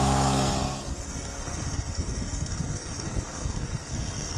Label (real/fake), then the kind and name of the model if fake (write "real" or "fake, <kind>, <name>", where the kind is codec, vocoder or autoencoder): fake, codec, SNAC